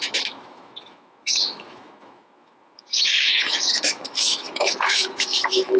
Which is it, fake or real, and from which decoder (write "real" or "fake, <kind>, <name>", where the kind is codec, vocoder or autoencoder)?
fake, autoencoder, DAC-VAE